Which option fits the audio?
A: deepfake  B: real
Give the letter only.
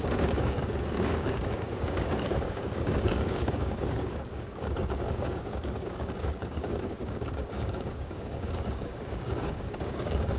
A